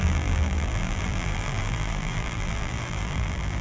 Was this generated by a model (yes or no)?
yes